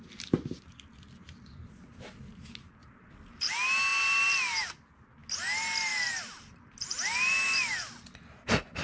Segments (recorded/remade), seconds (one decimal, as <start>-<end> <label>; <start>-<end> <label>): 0.0-2.8 recorded; 2.8-3.5 remade; 3.5-3.9 recorded; 3.9-4.9 remade; 4.9-5.9 recorded; 5.9-7.9 remade; 7.9-8.8 recorded